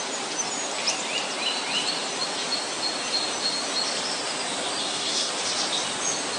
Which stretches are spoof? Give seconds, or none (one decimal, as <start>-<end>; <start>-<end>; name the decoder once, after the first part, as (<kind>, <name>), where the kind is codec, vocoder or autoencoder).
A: 4.8-5.3 (codec, SNAC)